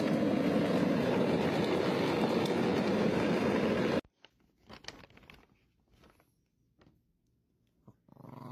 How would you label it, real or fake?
real